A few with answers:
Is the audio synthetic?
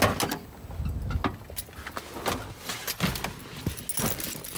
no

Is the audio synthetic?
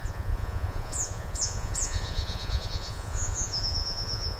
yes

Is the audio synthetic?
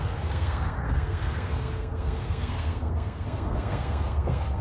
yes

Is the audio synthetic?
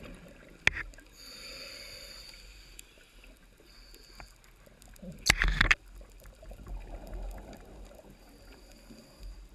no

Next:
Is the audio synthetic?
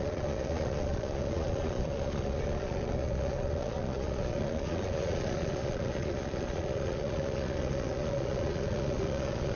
yes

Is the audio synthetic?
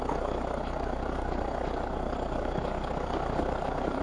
yes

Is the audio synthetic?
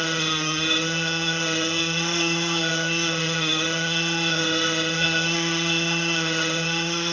yes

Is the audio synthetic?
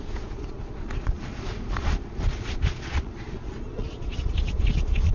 yes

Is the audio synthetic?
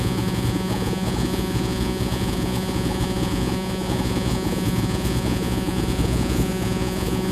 yes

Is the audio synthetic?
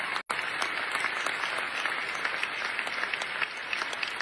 no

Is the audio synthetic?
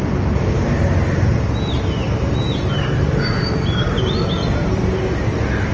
no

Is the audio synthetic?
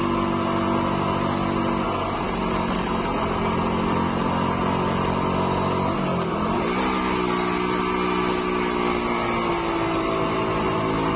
no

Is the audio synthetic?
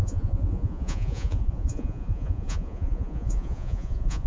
yes